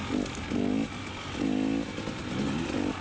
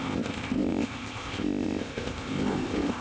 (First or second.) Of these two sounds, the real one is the first